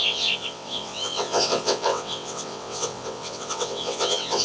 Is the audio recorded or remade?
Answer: remade